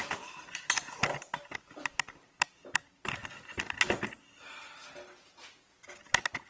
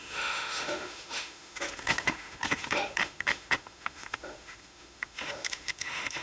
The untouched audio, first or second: first